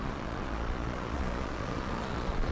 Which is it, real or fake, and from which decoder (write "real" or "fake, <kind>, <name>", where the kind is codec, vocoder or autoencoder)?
fake, vocoder, Vocos